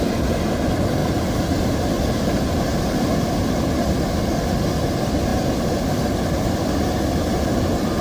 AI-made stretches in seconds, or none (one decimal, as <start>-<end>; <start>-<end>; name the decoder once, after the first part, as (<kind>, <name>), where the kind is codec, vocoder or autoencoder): 0.0-1.0 (vocoder, BigVGAN v2); 4.6-8.0